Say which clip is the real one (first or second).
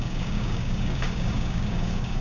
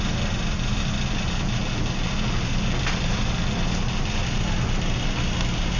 second